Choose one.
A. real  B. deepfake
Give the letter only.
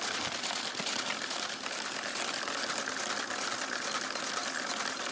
A